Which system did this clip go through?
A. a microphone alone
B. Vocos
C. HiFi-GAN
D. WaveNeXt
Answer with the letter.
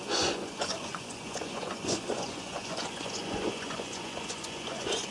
B